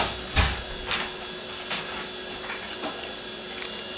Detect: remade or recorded recorded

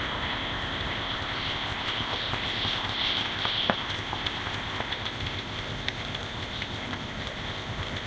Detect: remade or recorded remade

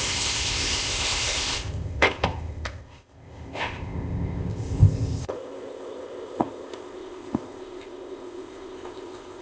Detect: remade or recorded remade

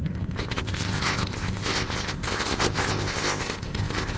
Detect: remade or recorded remade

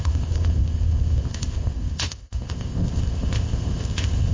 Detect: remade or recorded remade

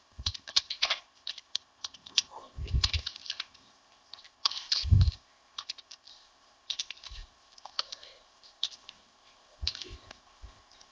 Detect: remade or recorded remade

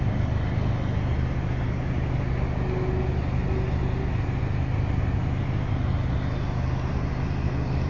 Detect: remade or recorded recorded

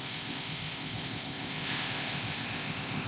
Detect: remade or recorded remade